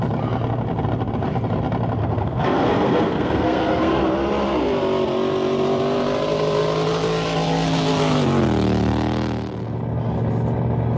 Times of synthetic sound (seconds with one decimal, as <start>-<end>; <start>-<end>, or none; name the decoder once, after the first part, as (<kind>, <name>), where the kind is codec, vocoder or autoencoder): 2.0-4.0 (codec, SNAC)